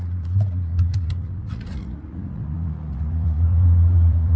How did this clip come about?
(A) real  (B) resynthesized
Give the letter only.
B